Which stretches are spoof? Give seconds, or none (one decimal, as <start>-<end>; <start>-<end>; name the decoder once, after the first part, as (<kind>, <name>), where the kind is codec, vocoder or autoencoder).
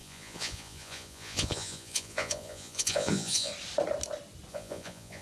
0.0-3.5 (vocoder, Vocos); 4.5-5.2